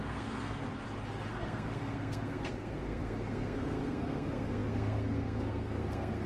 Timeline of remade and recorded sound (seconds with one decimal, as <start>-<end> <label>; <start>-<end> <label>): 0.0-0.7 remade; 0.7-1.3 recorded; 1.3-6.3 remade